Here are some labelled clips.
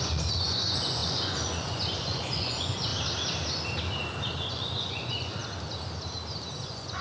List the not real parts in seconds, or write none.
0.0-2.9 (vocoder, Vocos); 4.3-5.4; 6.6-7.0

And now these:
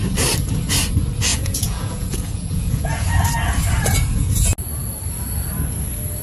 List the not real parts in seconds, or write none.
1.3-2.9 (vocoder, Vocos)

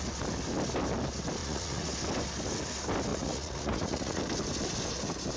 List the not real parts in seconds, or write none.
1.4-1.9 (vocoder, Vocos); 3.1-4.2

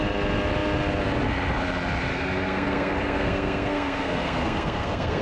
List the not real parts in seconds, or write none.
2.1-5.2 (codec, SNAC)

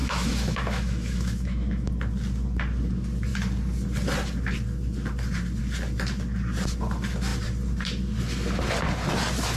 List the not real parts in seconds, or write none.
0.0-1.9 (autoencoder, DAC-VAE)